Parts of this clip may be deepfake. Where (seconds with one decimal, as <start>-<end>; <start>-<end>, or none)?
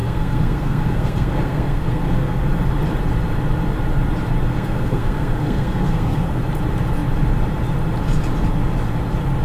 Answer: 0.0-2.5; 4.5-6.4